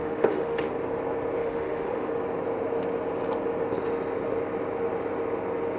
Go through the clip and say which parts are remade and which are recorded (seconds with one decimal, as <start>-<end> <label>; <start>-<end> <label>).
0.0-0.7 remade; 0.7-1.4 recorded; 1.4-2.1 remade; 2.1-5.8 recorded